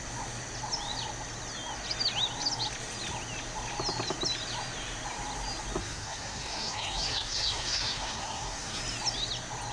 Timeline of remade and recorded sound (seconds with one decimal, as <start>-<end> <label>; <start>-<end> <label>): 0.0-5.8 recorded; 5.8-8.8 remade; 8.8-9.7 recorded